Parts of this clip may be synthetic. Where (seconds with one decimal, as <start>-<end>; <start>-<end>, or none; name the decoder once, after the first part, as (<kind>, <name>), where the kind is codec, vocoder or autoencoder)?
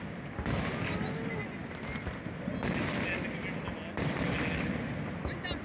none